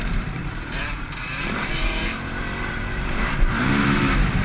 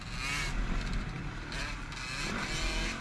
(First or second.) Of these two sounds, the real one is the second